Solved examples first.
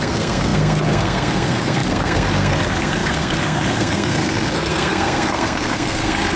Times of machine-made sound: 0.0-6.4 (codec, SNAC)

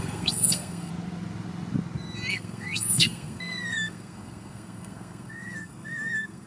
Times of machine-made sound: 0.0-0.9 (codec, SNAC); 2.3-6.5

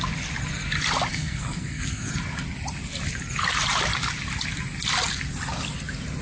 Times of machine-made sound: 1.1-2.1 (codec, SNAC)

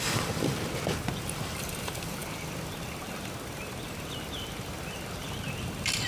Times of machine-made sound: none

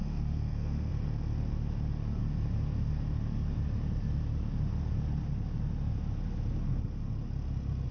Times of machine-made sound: 0.0-0.9 (codec, SNAC)

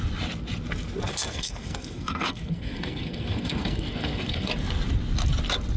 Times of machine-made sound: 1.1-4.5 (codec, SNAC)

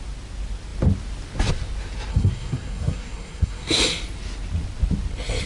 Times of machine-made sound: 2.1-3.8 (codec, SNAC)

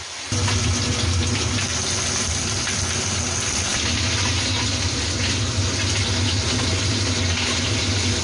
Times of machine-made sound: none